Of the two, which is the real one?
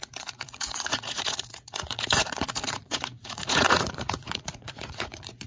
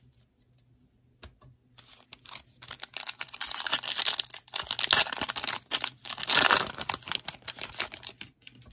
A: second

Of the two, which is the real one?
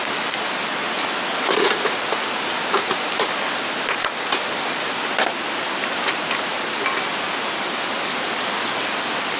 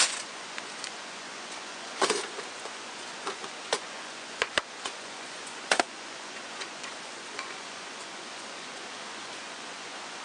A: first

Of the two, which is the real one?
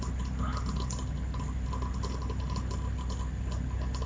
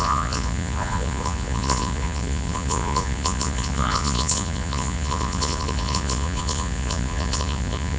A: first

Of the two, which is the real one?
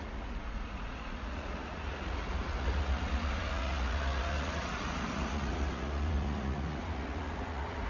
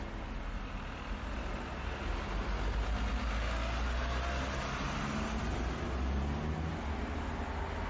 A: second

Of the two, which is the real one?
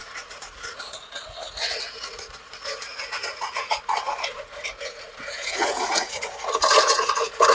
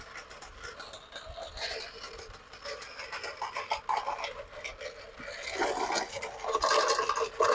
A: second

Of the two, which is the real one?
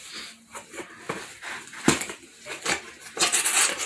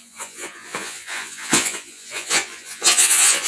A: first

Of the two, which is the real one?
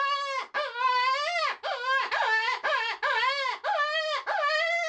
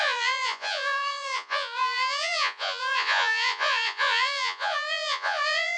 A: first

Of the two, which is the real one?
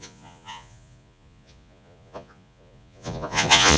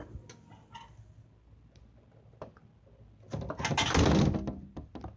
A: second